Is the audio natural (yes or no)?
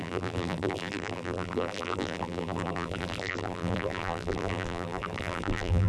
no